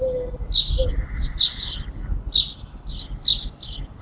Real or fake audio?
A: real